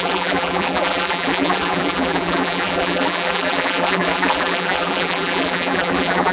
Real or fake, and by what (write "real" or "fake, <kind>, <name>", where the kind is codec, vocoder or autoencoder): fake, vocoder, BigVGAN v2